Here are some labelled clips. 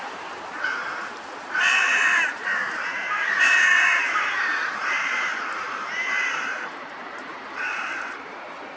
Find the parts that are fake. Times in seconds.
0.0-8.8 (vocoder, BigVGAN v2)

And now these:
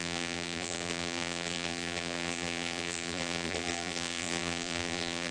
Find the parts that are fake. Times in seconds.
0.0-5.3 (vocoder, BigVGAN v2)

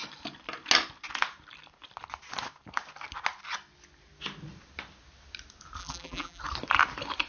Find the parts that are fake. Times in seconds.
5.8-6.4 (vocoder, BigVGAN v2)

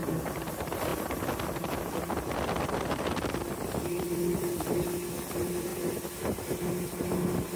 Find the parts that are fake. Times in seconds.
5.7-6.7 (vocoder, BigVGAN v2)

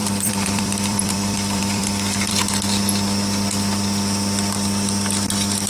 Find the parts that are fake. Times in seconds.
0.0-2.4 (vocoder, BigVGAN v2)

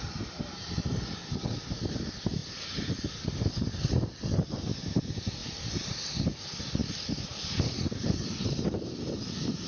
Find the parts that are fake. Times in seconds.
2.4-3.5 (vocoder, BigVGAN v2); 5.4-6.2; 6.8-7.8

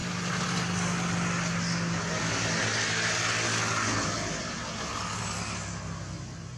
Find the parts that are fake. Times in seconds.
none